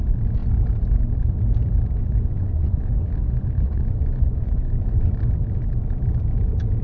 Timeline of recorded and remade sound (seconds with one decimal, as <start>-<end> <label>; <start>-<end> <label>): 0.0-2.0 recorded; 2.0-4.8 remade; 4.8-6.8 recorded